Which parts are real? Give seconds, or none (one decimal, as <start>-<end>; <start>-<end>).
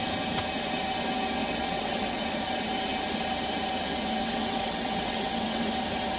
0.0-1.4; 2.2-4.2; 5.6-6.2